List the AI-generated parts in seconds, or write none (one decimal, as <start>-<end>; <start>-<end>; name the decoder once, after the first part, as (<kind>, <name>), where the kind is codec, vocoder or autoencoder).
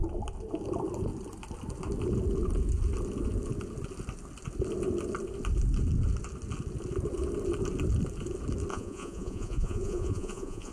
8.7-10.7 (vocoder, Vocos)